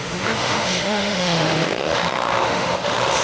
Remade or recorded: remade